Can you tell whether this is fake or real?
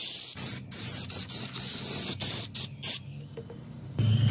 real